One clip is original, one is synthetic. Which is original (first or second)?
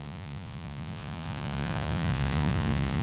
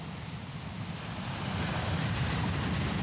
second